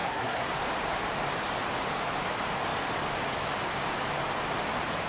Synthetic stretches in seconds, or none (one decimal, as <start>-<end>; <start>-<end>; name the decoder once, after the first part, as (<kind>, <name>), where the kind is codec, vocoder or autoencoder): 0.0-0.5 (codec, SNAC)